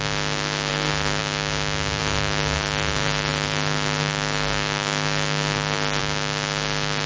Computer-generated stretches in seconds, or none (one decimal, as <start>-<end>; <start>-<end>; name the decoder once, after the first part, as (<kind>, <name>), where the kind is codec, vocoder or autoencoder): 0.7-1.2 (codec, DAC); 2.0-6.0